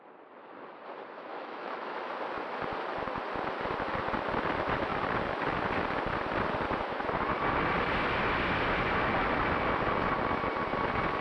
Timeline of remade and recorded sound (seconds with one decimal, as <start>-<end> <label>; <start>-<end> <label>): 0.0-1.3 recorded; 1.3-2.1 remade; 2.1-11.2 recorded